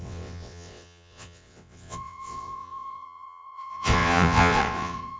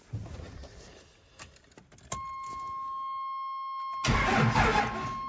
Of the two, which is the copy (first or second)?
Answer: first